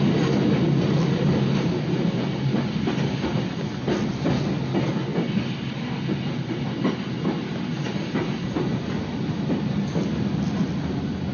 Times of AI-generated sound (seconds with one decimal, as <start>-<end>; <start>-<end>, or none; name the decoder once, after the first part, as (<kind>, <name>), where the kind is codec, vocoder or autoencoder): none